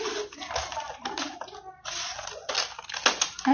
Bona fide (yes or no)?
yes